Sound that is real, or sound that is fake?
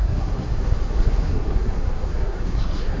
fake